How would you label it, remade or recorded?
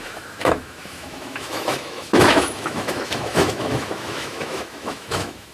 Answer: remade